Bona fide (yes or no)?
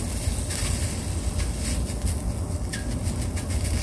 yes